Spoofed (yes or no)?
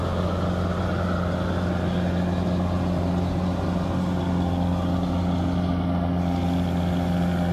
no